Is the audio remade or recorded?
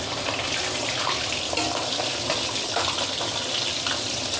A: recorded